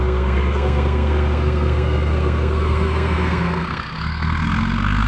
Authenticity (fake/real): fake